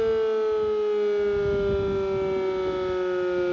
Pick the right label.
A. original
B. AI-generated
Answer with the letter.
A